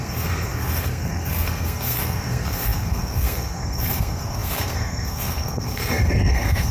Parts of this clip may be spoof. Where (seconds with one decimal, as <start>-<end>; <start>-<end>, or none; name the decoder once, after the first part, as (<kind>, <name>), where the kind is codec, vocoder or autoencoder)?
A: 0.0-6.7 (codec, SNAC)